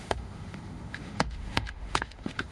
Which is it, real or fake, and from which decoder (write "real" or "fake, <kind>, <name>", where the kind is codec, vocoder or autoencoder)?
fake, autoencoder, DAC-VAE